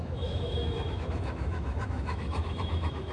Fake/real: fake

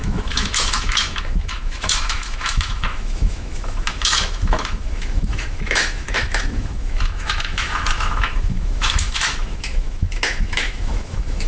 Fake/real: fake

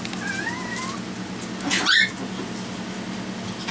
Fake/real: real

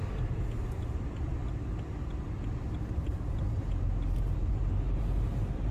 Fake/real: real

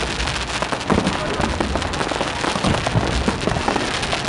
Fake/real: real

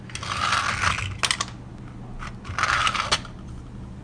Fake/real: real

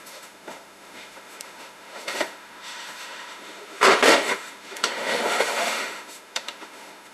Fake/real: fake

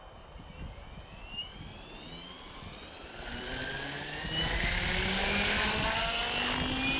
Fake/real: real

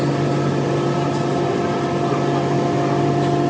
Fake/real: real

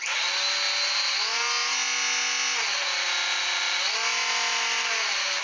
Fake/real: real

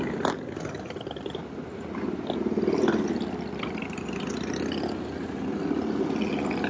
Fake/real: real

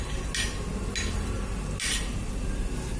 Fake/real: real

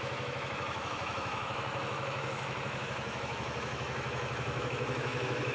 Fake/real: fake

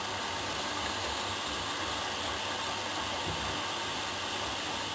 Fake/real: real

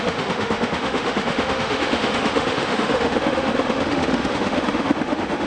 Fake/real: fake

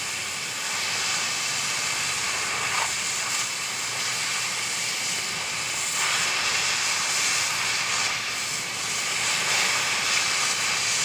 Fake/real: real